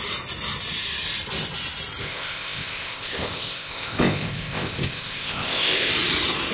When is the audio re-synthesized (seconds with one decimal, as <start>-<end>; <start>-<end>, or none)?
2.0-5.9